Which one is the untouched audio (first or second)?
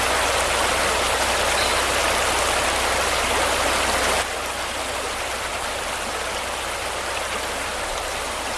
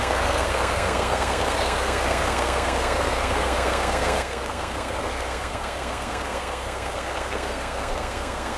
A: first